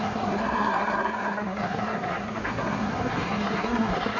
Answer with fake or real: fake